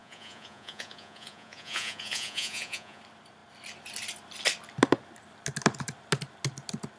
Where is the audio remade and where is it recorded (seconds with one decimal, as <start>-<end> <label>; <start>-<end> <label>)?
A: 0.0-3.0 remade; 3.0-7.0 recorded